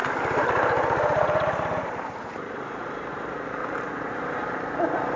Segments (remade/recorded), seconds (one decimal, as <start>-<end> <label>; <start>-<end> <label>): 0.0-3.1 remade; 3.1-3.6 recorded; 3.6-4.1 remade; 4.1-5.2 recorded